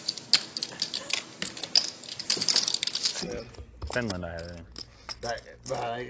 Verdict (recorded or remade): recorded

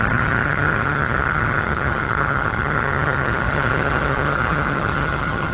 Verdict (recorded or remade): remade